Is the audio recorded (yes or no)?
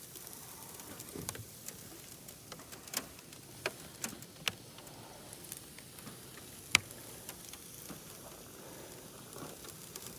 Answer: yes